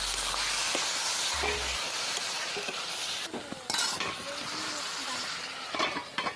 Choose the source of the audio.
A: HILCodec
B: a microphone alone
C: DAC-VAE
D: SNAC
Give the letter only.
B